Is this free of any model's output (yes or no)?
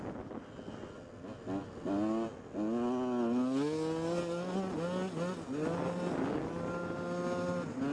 yes